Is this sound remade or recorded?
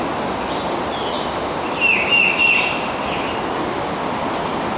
recorded